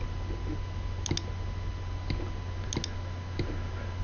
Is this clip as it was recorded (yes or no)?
yes